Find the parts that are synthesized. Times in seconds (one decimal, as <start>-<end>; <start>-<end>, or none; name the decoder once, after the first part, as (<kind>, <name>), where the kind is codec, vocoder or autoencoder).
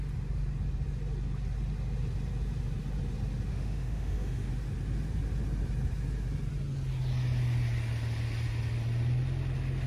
3.5-4.5 (autoencoder, DAC-VAE)